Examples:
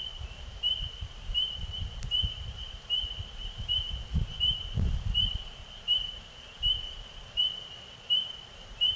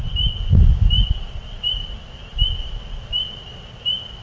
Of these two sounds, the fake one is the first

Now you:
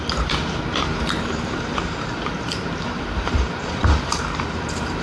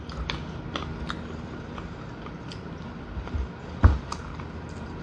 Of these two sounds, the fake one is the first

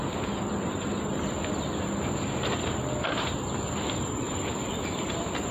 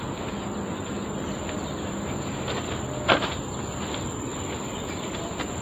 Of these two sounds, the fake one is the first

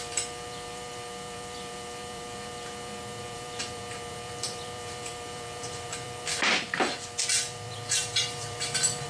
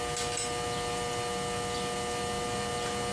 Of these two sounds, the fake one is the first